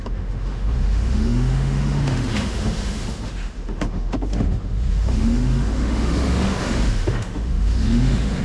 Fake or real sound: fake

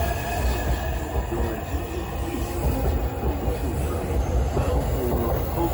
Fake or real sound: real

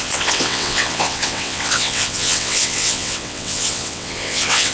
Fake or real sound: fake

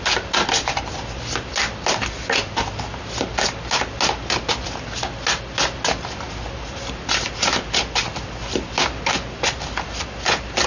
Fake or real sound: real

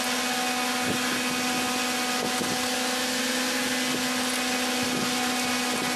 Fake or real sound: real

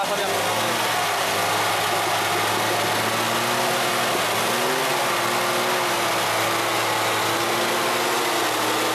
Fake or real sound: real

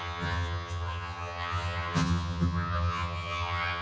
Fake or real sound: fake